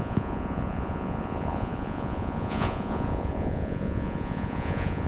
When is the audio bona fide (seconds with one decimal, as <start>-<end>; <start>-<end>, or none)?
none